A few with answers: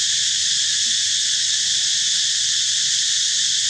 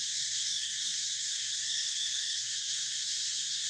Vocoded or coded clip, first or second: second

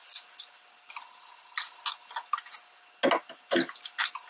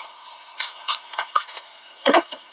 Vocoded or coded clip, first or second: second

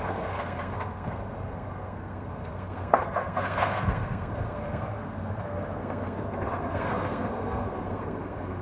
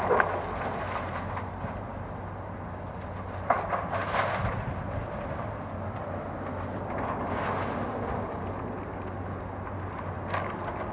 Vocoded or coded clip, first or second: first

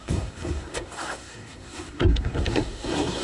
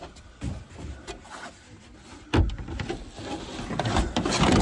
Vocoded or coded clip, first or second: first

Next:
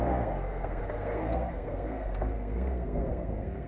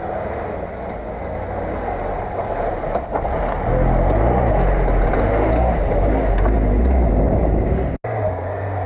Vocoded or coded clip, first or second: first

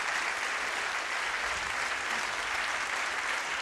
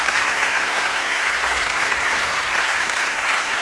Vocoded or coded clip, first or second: second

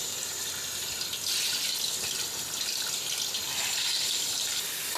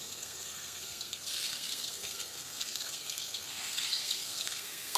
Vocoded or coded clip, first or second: second